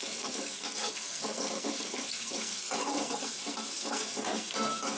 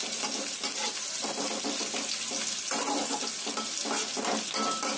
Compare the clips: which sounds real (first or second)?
second